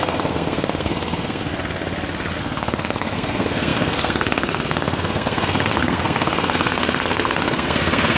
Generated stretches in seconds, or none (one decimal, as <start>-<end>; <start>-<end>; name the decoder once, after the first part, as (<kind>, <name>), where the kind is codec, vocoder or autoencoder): 0.0-1.5 (codec, SNAC); 2.4-8.2